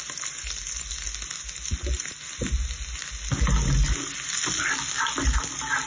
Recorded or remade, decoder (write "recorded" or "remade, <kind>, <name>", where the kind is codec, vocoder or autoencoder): recorded